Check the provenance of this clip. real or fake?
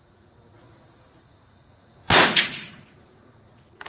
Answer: fake